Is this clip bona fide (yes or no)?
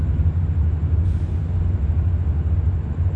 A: yes